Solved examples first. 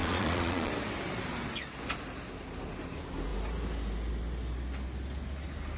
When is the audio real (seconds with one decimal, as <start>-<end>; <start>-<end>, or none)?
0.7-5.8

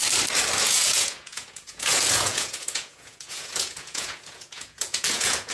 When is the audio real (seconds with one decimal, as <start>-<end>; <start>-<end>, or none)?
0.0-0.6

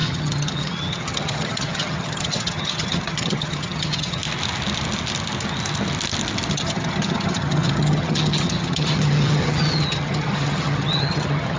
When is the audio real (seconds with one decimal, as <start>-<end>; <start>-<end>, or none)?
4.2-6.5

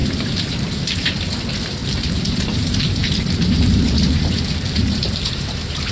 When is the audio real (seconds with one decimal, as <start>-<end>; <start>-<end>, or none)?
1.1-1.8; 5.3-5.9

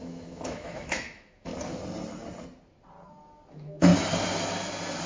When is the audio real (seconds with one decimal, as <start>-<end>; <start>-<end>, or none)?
1.5-3.5; 3.9-5.1

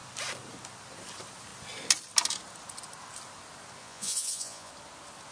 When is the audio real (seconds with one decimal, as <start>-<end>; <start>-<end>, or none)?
0.0-3.8; 4.7-5.3

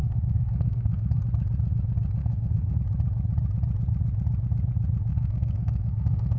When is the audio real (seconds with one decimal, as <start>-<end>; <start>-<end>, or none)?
1.2-2.2; 2.8-5.1

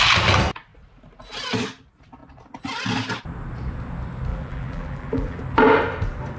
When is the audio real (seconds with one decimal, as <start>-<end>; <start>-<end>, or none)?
0.0-4.3; 5.4-6.4